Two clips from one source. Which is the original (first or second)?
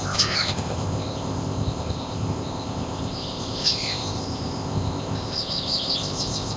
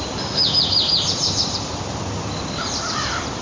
second